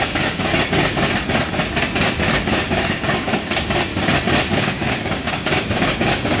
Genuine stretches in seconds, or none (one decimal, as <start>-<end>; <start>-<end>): 0.5-2.2; 3.9-4.6